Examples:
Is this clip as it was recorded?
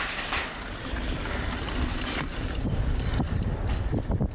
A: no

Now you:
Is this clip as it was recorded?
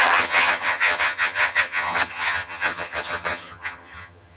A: no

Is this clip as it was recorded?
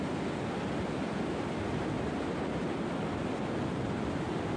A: yes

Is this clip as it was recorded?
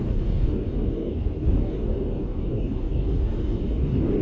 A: no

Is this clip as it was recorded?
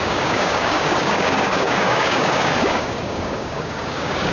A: no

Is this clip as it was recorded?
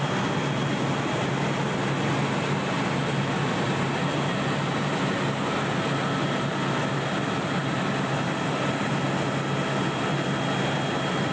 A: yes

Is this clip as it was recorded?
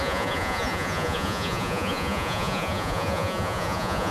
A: no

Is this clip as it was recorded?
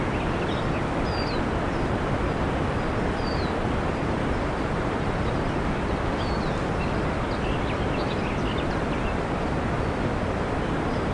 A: yes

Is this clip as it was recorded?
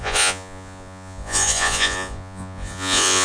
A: no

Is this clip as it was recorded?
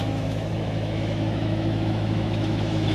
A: no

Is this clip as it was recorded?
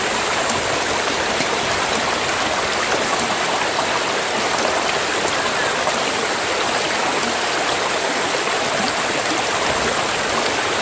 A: yes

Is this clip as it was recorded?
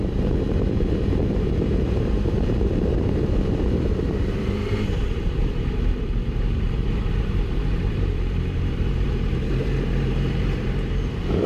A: no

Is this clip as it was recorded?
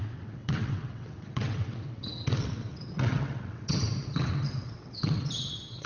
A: no